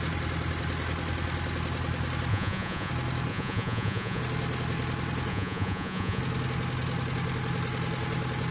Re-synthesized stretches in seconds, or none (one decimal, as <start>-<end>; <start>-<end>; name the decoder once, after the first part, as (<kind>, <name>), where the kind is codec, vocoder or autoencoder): 2.3-2.9 (vocoder, Vocos); 3.3-4.2; 5.3-6.2